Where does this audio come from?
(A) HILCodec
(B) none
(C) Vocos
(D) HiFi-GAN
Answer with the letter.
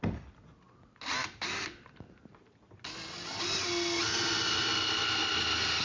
B